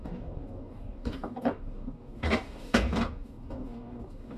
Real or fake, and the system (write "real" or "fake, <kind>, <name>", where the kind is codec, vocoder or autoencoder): fake, codec, DAC